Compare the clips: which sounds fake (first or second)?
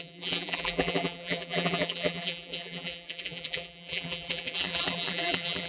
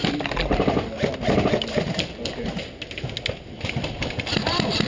first